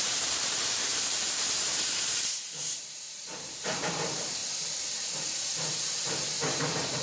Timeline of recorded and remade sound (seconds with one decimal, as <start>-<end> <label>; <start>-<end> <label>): 0.0-4.4 remade; 4.4-5.5 recorded; 5.5-7.0 remade